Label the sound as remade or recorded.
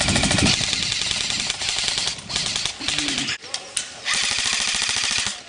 recorded